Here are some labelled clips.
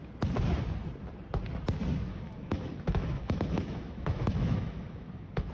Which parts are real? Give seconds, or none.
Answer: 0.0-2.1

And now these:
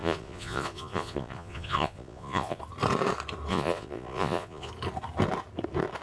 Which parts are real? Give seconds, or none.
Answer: 2.6-3.5; 4.7-6.0

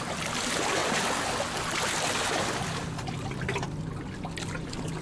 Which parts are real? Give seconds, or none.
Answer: 0.0-5.0

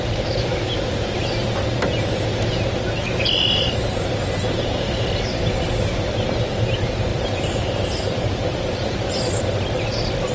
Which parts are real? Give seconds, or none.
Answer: 0.0-7.1; 9.4-10.3

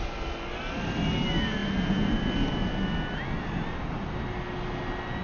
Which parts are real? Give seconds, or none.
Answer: 0.0-5.2

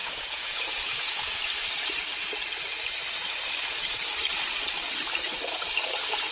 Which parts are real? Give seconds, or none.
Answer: 1.5-6.3

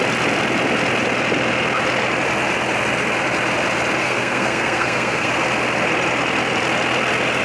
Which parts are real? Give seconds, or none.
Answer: 0.0-4.0; 5.3-7.4

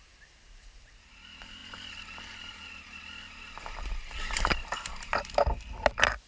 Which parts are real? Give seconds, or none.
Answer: 0.0-6.3